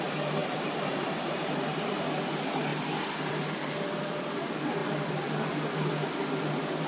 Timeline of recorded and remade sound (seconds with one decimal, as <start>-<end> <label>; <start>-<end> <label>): 0.0-0.4 recorded; 0.4-1.1 remade; 1.1-2.7 recorded; 2.7-4.1 remade; 4.1-6.9 recorded